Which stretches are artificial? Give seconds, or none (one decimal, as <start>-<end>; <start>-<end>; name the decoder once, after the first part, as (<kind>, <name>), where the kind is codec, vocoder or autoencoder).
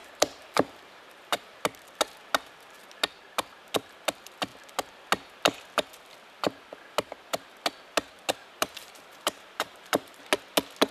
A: 0.0-1.6 (vocoder, BigVGAN v2); 8.4-10.3